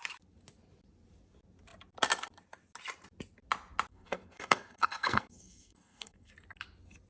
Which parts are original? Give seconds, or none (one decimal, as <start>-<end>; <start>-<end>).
0.0-3.9; 6.3-7.1